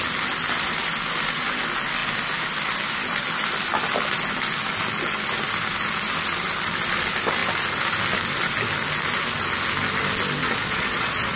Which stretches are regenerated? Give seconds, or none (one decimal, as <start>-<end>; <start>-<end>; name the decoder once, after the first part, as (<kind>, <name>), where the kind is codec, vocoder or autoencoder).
10.4-11.4 (vocoder, Vocos)